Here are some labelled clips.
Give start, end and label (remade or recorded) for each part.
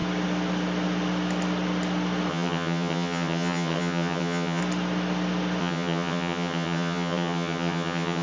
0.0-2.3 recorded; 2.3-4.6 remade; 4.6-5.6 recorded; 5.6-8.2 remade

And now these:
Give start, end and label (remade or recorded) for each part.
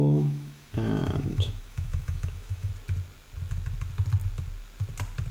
0.0-2.7 remade; 2.7-5.3 recorded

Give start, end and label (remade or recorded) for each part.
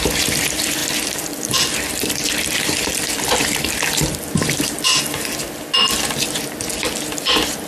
0.0-0.8 recorded; 0.8-5.0 remade; 5.0-7.7 recorded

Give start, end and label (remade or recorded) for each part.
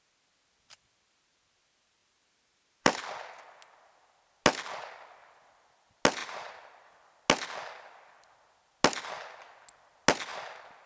0.0-2.0 recorded; 2.0-3.0 remade; 3.0-6.2 recorded; 6.2-6.9 remade; 6.9-10.9 recorded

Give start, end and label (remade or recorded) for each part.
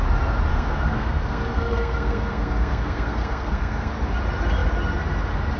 0.0-0.5 recorded; 0.5-3.9 remade; 3.9-5.6 recorded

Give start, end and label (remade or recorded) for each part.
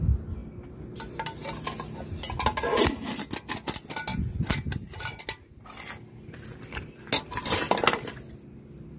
0.0-9.0 recorded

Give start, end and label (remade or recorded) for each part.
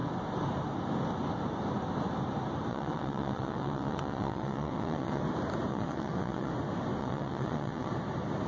0.0-2.7 recorded; 2.7-5.2 remade; 5.2-5.7 recorded; 5.7-6.5 remade; 6.5-7.0 recorded; 7.0-7.9 remade; 7.9-8.5 recorded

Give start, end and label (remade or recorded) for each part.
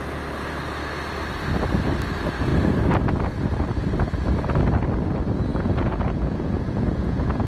0.0-5.5 recorded; 5.5-7.5 remade